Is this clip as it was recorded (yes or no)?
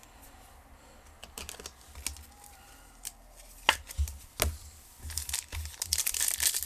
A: yes